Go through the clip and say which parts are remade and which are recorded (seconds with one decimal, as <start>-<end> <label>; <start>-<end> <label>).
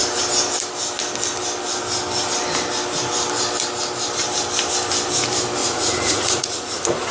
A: 0.0-5.6 recorded; 5.6-7.1 remade